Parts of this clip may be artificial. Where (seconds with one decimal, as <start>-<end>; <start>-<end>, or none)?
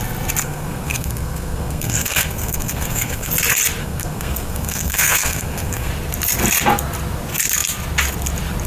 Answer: 0.4-3.3; 3.8-5.9